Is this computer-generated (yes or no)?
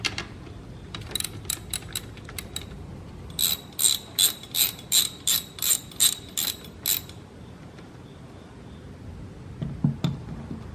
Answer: no